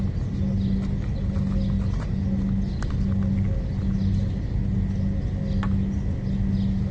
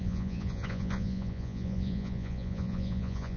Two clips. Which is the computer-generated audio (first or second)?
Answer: second